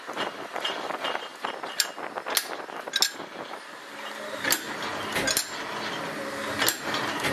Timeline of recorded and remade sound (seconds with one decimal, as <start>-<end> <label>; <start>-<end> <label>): 0.0-1.3 recorded; 1.3-1.9 remade; 1.9-7.3 recorded